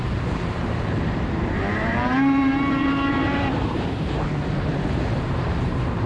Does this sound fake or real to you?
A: fake